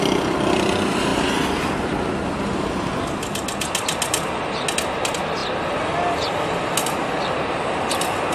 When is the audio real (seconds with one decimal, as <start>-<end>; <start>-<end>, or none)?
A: 0.0-8.3